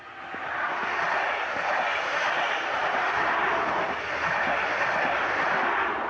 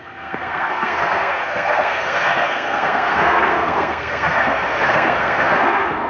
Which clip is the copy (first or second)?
second